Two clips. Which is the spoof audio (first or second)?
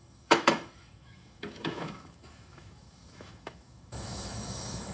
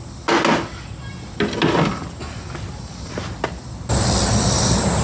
first